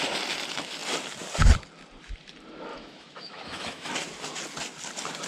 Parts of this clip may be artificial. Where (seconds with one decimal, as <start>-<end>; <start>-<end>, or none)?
2.7-3.9